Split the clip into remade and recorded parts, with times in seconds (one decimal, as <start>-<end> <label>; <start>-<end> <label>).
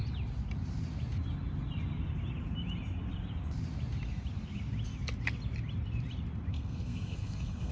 0.0-6.5 recorded; 6.5-7.7 remade